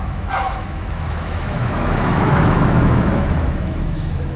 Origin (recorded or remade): remade